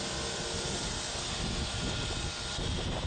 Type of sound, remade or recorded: recorded